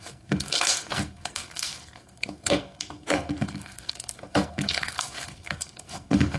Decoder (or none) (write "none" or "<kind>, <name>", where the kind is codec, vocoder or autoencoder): codec, SNAC